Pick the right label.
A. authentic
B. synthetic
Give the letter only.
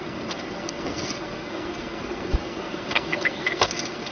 B